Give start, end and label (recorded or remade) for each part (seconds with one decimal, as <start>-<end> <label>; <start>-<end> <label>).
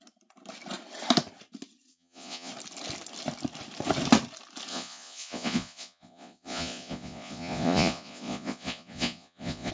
0.0-1.9 recorded; 1.9-2.5 remade; 2.5-4.7 recorded; 4.7-9.7 remade